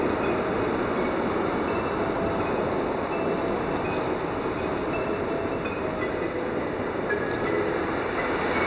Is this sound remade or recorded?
recorded